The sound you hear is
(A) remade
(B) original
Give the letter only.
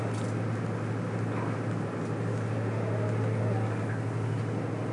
B